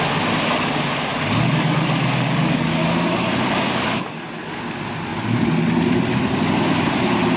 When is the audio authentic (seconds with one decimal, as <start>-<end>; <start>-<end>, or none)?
0.0-1.1; 4.6-7.4